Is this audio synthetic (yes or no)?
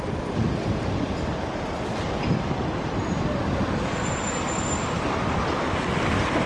no